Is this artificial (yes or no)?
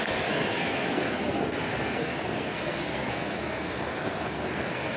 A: yes